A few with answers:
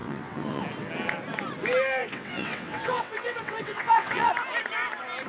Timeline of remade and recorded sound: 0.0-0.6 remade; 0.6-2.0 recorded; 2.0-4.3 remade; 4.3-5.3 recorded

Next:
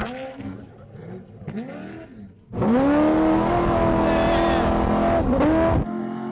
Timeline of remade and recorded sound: 0.0-6.3 recorded

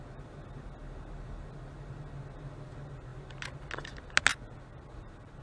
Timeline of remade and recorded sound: 0.0-5.4 recorded

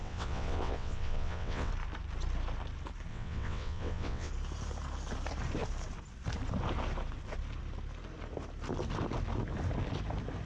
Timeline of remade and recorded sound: 0.0-1.7 remade; 1.7-3.1 recorded; 3.1-4.3 remade; 4.3-10.5 recorded

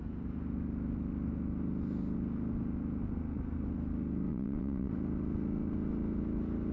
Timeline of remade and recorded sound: 0.0-4.3 recorded; 4.3-4.9 remade; 4.9-6.7 recorded